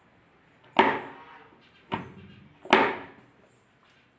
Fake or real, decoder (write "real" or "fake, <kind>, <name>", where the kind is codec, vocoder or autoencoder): real